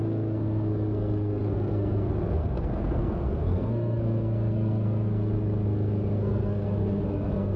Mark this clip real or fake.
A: fake